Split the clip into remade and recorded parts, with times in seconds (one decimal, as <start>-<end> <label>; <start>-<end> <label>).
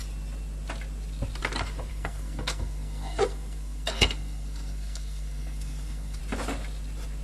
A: 0.0-1.9 recorded; 1.9-6.2 remade; 6.2-7.2 recorded